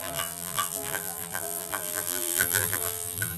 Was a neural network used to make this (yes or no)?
yes